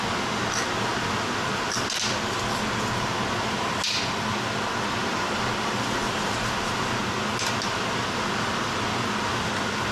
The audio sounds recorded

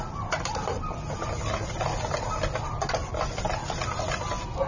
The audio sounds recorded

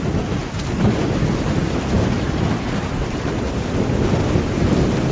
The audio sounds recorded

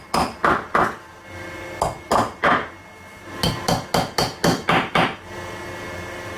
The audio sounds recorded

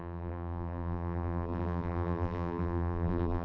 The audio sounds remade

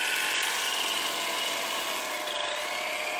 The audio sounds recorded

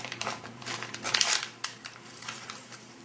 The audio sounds remade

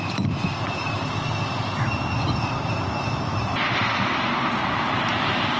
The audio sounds remade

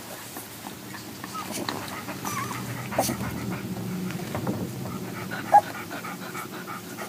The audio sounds recorded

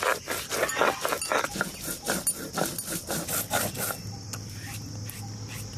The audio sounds recorded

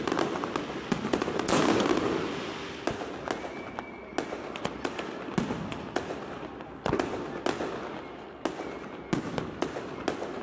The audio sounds recorded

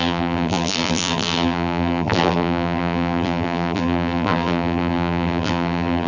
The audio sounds remade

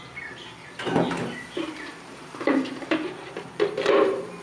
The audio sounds remade